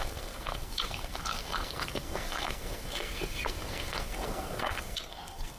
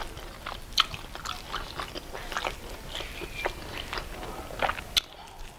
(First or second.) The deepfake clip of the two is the first